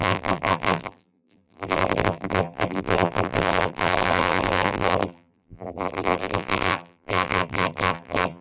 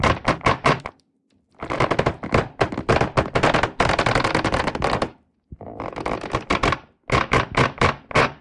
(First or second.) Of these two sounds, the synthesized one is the first